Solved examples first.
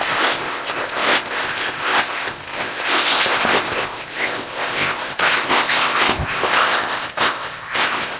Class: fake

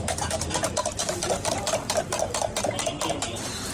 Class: real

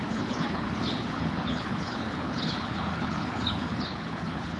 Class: fake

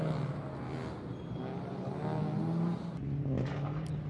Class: real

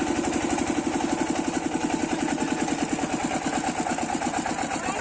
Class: real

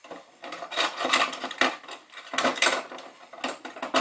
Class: real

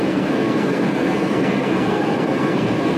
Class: fake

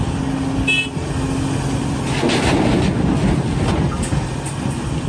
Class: real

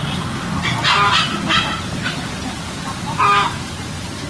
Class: real